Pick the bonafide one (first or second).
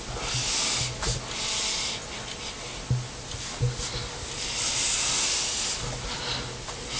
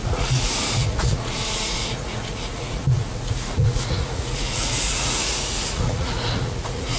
first